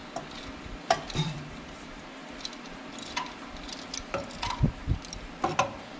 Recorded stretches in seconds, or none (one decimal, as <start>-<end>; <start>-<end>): 0.0-0.6; 2.2-6.0